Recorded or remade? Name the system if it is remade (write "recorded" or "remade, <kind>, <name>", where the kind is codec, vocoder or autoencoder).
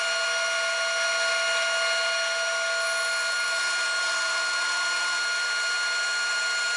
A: recorded